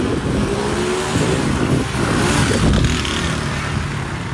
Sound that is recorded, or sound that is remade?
recorded